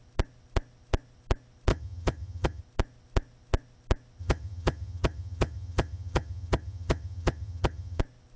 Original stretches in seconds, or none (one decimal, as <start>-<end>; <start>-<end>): 0.0-1.7; 2.6-4.2; 8.0-8.4